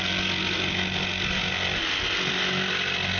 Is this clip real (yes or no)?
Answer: yes